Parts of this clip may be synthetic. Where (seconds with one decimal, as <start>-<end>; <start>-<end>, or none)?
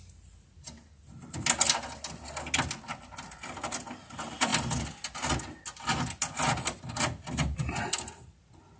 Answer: none